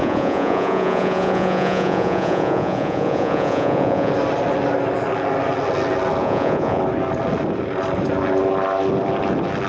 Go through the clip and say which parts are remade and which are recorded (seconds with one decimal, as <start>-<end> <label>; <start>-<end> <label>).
0.0-4.1 remade; 4.1-6.2 recorded; 6.2-6.8 remade; 6.8-9.7 recorded